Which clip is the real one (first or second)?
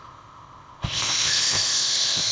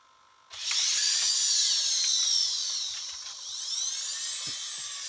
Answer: second